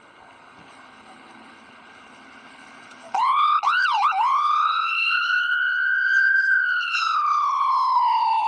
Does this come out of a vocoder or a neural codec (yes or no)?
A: yes